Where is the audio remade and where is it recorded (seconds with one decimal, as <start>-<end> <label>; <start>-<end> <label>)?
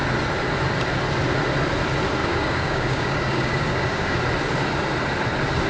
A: 0.0-2.2 recorded; 2.2-4.2 remade; 4.2-5.7 recorded